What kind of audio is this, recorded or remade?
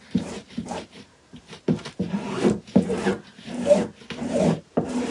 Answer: remade